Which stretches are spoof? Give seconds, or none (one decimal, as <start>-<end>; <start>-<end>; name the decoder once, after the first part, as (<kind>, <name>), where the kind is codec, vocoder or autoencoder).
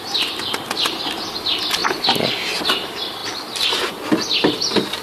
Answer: none